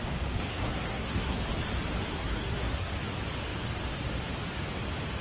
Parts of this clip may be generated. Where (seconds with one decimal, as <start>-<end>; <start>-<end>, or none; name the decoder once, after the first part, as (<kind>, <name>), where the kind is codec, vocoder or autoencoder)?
0.5-1.4 (codec, SNAC); 2.1-2.9